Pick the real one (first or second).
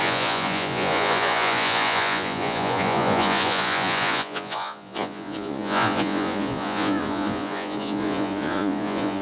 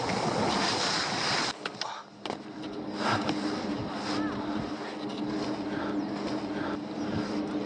second